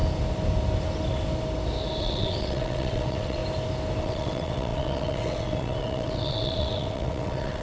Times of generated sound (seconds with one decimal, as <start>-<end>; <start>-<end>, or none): 2.0-3.4; 4.0-7.6